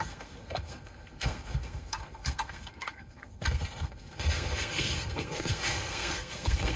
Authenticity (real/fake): fake